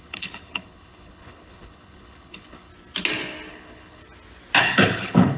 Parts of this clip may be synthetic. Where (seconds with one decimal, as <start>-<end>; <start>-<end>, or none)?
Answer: 0.0-2.7; 3.5-4.0; 4.6-5.4